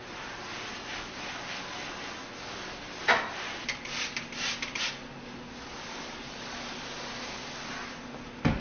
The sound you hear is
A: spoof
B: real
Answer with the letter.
B